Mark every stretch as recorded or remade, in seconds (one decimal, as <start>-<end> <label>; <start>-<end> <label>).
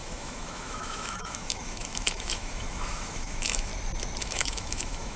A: 0.0-3.7 remade; 3.7-4.2 recorded; 4.2-5.2 remade